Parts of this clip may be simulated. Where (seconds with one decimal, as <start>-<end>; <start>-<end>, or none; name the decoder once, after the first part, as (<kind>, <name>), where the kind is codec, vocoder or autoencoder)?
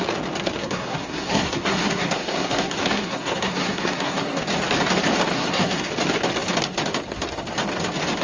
0.6-4.4 (codec, SNAC); 5.3-5.9